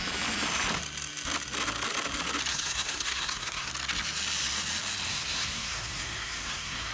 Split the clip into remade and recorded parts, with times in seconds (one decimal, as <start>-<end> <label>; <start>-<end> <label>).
0.0-2.5 recorded; 2.5-3.7 remade; 3.7-5.1 recorded; 5.1-6.9 remade